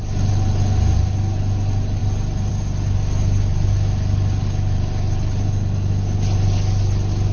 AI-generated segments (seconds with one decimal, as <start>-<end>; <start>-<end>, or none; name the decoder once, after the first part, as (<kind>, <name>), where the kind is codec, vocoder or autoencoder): none